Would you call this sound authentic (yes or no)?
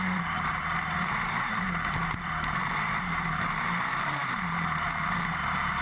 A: no